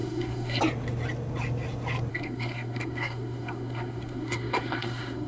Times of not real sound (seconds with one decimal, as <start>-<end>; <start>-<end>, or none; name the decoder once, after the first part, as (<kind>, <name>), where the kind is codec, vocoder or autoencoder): 0.0-0.6 (codec, SNAC); 2.1-5.3